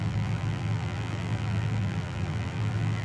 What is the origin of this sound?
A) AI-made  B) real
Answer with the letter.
A